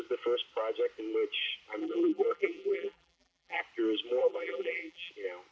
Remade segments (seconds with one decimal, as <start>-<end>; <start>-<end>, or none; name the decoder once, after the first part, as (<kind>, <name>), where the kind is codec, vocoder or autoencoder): 1.8-3.6 (vocoder, BigVGAN v2); 4.2-5.1